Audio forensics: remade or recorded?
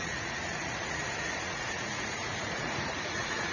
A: remade